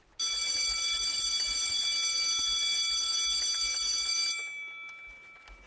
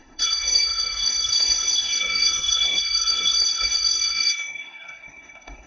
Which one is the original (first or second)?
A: first